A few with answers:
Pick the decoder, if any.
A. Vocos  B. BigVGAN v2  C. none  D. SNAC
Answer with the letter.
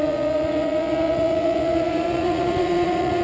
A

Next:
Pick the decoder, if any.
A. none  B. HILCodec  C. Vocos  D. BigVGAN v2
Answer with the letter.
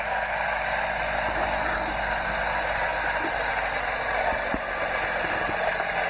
A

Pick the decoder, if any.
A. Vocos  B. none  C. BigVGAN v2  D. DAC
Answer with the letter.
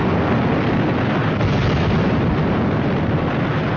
B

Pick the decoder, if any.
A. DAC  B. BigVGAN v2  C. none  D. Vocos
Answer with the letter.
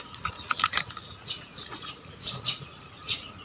D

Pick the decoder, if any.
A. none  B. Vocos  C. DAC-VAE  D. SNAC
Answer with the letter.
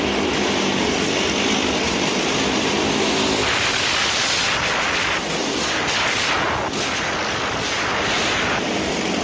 A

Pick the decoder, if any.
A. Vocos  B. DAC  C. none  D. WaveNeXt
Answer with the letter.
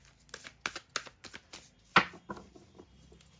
C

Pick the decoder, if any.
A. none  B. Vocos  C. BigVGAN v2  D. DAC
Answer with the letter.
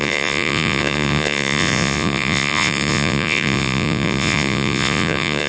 B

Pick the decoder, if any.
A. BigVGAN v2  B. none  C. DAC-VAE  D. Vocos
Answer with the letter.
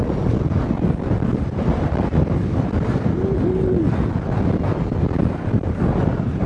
B